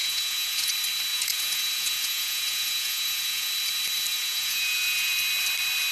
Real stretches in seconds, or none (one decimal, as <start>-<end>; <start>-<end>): 0.7-1.1; 3.5-4.1; 5.1-5.9